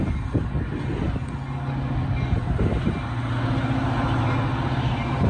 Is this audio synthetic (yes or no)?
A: no